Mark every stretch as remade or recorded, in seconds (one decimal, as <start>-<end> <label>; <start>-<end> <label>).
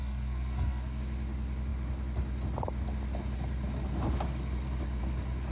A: 0.0-1.0 remade; 1.0-5.5 recorded